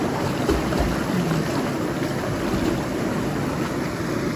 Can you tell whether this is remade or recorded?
remade